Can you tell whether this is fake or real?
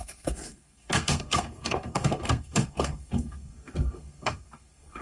fake